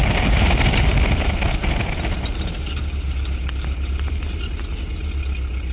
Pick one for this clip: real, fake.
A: real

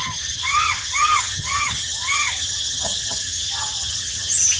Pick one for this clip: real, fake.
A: fake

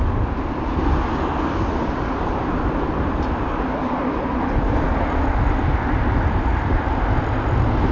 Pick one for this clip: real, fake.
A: real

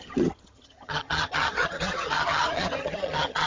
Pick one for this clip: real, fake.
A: fake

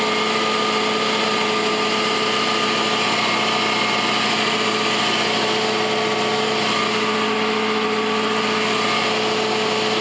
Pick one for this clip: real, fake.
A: real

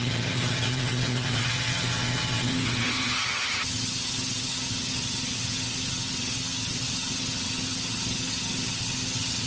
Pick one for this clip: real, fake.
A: fake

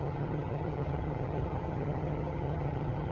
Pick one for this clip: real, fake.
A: fake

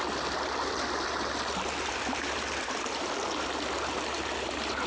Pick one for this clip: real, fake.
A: real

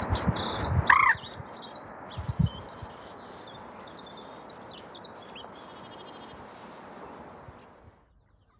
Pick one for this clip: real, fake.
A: real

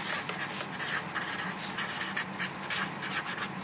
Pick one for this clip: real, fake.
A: real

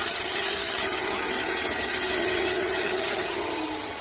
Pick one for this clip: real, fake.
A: fake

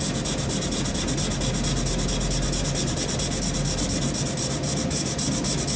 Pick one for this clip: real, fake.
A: real